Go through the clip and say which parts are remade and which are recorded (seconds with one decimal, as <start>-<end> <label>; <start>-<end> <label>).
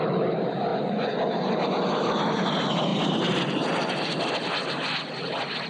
0.0-0.7 recorded; 0.7-1.2 remade; 1.2-5.7 recorded